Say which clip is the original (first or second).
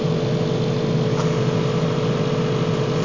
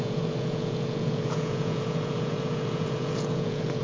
first